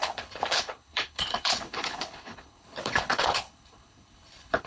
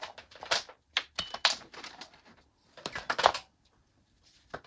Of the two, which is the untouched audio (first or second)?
second